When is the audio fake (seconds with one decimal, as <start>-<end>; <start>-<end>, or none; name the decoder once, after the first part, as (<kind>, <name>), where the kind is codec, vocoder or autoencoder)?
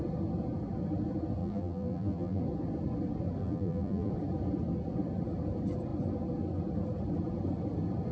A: 1.4-2.4 (vocoder, BigVGAN v2); 3.4-4.1